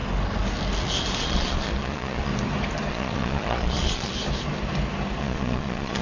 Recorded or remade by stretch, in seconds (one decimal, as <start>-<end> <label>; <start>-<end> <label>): 0.0-1.2 recorded; 1.2-2.3 remade; 2.3-2.9 recorded; 2.9-4.1 remade; 4.1-5.2 recorded; 5.2-6.0 remade